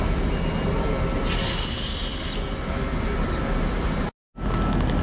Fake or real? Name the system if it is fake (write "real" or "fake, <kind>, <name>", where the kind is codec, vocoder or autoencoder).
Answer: real